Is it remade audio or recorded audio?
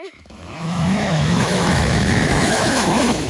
remade